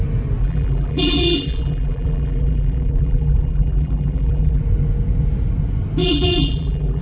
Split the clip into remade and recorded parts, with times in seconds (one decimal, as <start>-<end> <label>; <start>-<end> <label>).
0.0-0.4 recorded; 0.4-4.6 remade; 4.6-6.0 recorded; 6.0-7.0 remade